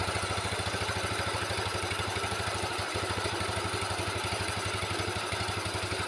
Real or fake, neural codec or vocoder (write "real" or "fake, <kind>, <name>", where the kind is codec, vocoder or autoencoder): fake, vocoder, BigVGAN v2